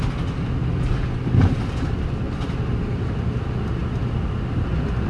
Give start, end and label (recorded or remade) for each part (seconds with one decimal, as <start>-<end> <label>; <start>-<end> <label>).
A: 0.0-5.1 recorded